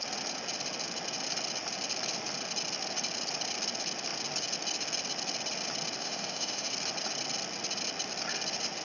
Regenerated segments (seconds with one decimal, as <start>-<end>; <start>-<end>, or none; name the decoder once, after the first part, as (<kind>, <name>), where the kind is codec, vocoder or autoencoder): 6.0-6.7 (autoencoder, DAC-VAE)